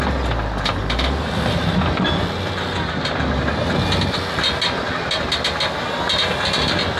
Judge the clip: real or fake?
real